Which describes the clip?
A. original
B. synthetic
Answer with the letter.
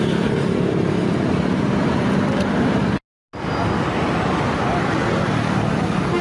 A